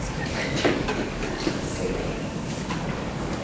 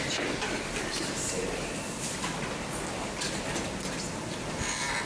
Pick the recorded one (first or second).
second